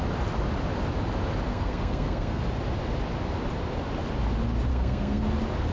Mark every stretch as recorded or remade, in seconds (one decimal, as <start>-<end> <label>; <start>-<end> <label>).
0.0-1.5 recorded; 1.5-2.4 remade; 2.4-4.7 recorded; 4.7-5.2 remade; 5.2-5.7 recorded